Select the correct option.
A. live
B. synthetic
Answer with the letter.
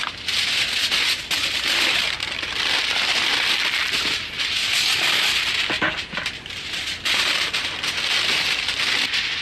A